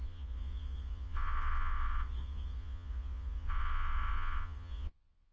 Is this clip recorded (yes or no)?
no